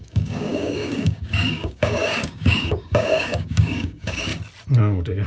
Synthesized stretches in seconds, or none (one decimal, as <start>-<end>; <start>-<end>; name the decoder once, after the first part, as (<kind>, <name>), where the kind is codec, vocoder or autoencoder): 0.0-4.3 (codec, DAC); 4.8-5.3